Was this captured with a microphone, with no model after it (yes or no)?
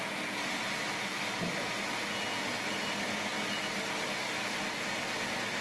yes